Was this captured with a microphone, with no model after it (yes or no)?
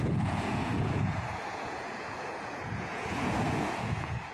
no